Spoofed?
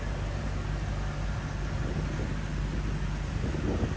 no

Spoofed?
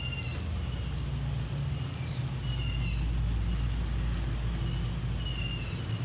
no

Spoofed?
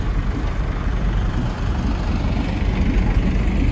no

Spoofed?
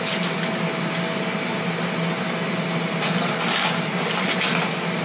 no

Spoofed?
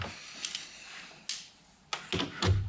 no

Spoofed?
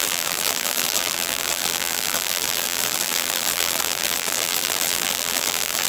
yes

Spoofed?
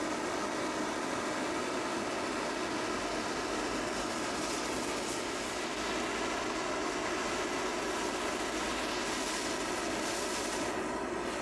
no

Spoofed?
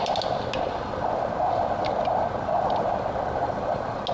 no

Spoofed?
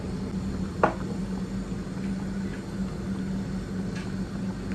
no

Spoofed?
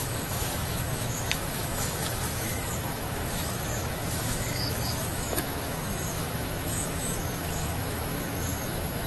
yes